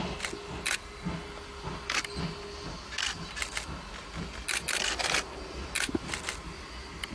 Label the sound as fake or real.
real